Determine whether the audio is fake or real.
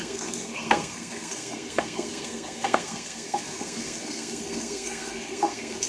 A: fake